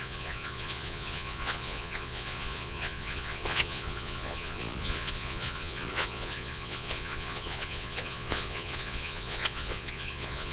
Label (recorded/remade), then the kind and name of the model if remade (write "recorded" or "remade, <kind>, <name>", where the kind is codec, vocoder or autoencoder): remade, vocoder, Vocos